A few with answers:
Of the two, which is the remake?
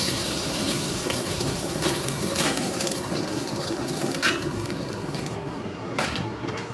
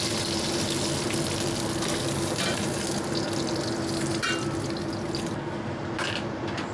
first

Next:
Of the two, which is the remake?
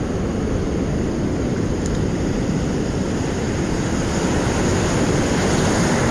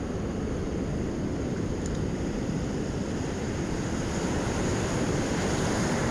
second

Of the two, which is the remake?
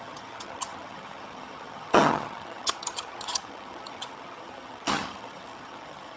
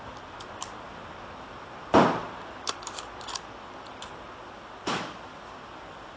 first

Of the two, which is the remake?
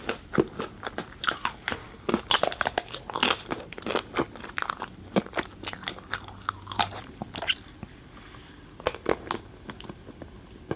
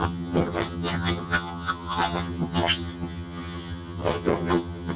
second